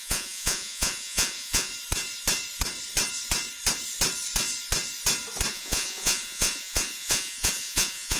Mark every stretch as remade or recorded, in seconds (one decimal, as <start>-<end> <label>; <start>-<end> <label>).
0.0-1.7 remade; 1.7-5.5 recorded; 5.5-8.2 remade